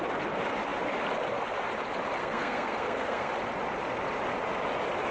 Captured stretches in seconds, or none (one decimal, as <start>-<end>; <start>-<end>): 0.0-2.2; 3.3-5.1